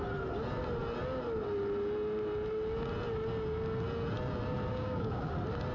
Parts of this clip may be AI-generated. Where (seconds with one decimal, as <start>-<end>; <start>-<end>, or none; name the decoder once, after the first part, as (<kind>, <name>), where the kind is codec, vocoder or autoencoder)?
4.7-5.3 (codec, DAC)